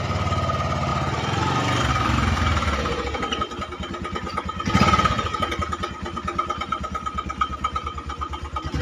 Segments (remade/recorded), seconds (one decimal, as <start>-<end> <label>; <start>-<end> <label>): 0.0-8.8 recorded